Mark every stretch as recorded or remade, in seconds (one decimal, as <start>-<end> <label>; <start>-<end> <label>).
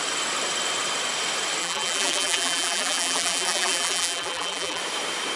0.0-1.6 recorded; 1.6-4.8 remade; 4.8-5.4 recorded